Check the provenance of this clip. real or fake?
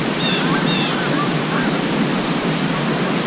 fake